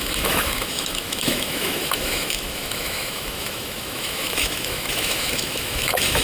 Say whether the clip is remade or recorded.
remade